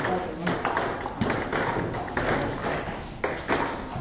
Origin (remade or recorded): recorded